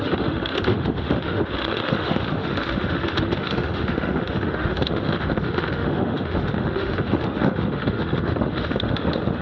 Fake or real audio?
fake